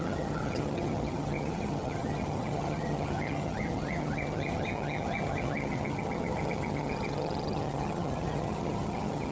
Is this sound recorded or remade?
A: remade